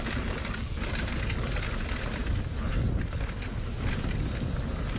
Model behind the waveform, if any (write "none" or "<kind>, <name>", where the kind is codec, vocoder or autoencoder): none